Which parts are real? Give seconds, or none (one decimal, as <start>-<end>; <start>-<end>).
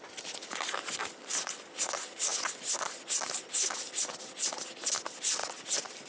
0.0-6.1